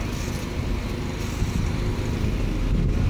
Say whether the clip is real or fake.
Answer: real